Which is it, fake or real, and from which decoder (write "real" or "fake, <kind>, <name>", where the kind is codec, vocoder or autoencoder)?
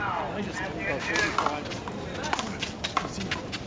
real